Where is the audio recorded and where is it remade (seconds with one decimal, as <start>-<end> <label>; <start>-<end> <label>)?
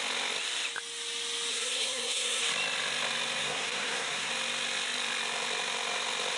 0.0-1.5 recorded; 1.5-2.4 remade; 2.4-3.4 recorded; 3.4-4.3 remade; 4.3-6.4 recorded